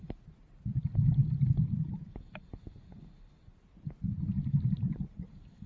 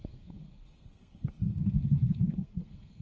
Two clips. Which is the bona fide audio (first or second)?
first